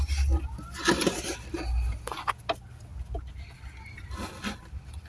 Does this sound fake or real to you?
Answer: real